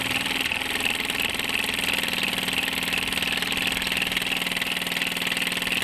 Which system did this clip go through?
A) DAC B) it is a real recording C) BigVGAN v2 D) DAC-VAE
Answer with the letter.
B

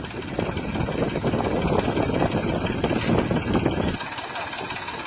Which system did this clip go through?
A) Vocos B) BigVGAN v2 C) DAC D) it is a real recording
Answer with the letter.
D